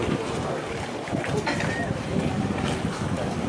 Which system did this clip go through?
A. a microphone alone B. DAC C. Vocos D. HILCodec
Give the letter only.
A